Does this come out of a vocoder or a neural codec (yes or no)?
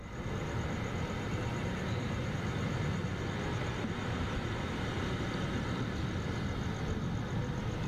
no